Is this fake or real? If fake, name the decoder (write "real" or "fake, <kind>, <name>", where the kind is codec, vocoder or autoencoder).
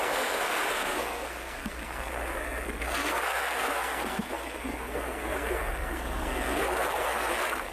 fake, codec, SNAC